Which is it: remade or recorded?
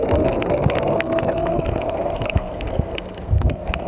remade